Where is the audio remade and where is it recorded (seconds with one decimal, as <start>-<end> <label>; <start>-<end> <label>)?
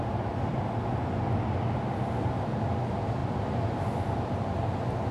0.0-5.1 recorded